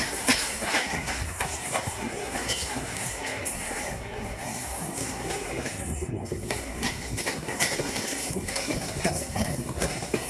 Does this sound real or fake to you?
fake